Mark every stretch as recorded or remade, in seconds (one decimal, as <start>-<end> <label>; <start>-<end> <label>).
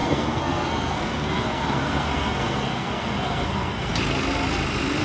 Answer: 0.0-3.9 remade; 3.9-5.0 recorded